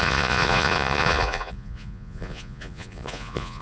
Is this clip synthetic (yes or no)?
yes